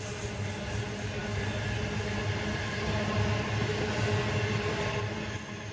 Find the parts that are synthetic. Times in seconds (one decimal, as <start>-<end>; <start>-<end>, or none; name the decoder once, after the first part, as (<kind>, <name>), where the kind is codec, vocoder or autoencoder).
none